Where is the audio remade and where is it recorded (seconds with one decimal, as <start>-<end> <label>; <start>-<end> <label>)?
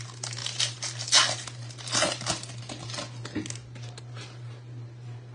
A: 0.0-5.3 recorded